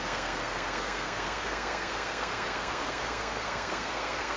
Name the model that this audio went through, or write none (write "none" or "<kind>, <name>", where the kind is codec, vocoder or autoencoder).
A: codec, SNAC